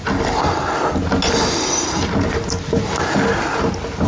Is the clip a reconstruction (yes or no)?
no